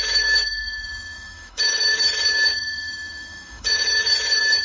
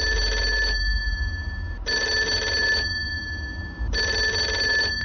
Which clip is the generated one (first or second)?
first